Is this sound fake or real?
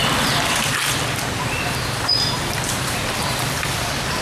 fake